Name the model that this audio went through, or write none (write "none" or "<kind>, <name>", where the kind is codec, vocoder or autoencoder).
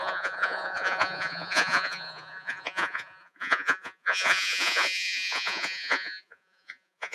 vocoder, Vocos